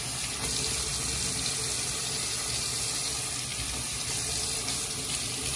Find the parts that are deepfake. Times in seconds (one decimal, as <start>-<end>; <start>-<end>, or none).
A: 3.5-4.9